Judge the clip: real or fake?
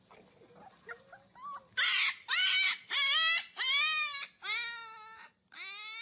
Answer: real